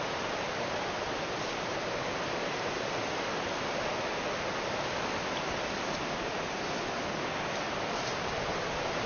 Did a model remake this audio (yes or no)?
no